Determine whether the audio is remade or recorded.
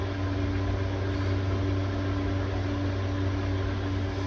recorded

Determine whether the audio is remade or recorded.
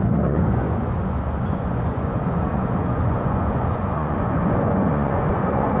remade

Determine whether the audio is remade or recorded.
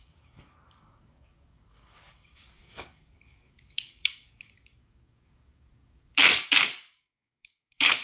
remade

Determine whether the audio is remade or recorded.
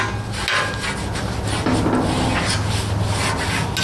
recorded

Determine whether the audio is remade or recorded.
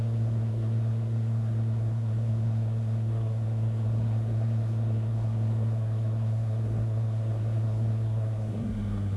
remade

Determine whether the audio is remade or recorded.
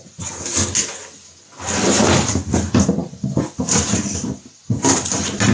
recorded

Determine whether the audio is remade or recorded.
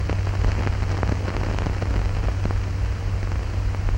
recorded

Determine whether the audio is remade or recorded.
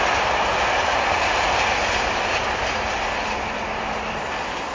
recorded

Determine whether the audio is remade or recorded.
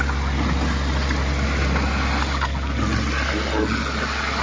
recorded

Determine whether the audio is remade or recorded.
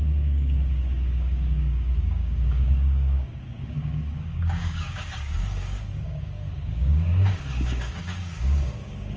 remade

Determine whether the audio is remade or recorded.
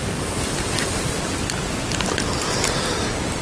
recorded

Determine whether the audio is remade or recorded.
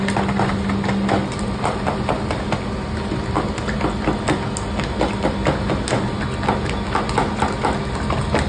recorded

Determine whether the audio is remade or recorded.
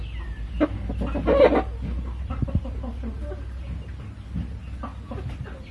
recorded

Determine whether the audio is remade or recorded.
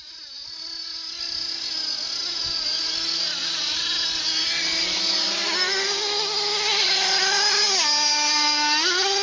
recorded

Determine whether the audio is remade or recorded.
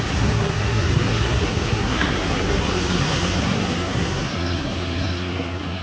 remade